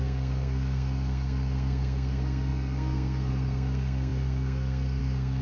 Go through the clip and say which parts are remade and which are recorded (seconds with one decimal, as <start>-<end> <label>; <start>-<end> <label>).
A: 0.0-5.4 remade